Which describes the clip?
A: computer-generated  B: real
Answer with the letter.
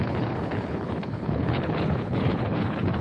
A